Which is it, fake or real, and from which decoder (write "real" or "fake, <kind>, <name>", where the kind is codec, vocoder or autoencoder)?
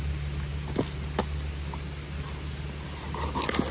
real